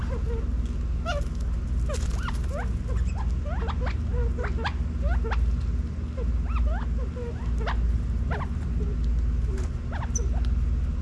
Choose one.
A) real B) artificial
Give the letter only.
A